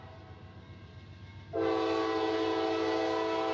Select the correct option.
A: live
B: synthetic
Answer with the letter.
A